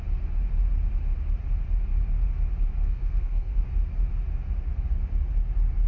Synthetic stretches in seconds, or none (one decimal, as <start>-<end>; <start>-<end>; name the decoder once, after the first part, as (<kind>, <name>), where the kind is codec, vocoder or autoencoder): 2.8-3.6 (codec, SNAC)